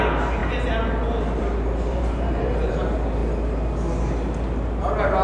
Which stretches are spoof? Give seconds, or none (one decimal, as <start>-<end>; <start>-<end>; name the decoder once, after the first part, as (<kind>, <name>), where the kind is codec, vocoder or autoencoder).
1.9-2.7 (vocoder, BigVGAN v2)